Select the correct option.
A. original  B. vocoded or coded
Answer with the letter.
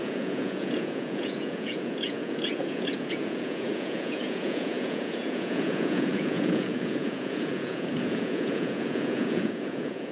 B